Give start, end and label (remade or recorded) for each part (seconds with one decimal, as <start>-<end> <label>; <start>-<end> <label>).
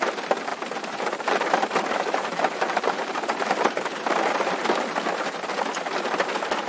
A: 0.0-0.5 recorded; 0.5-4.5 remade; 4.5-6.7 recorded